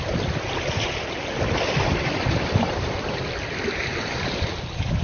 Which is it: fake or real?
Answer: real